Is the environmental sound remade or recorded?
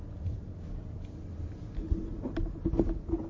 recorded